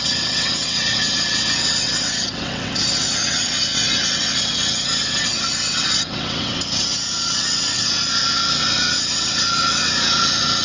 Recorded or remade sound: remade